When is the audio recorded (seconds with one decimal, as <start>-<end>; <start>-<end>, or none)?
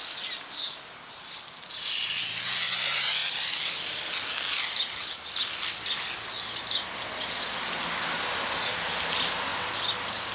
0.0-10.3